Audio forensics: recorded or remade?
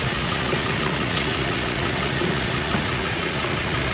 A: remade